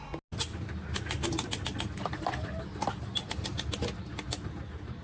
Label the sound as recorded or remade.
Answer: recorded